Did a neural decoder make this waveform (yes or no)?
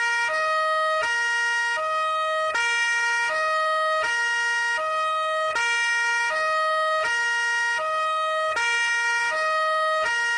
no